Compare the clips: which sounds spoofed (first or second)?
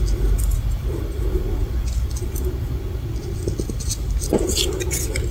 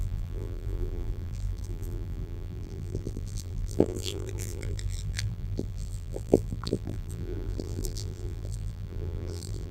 second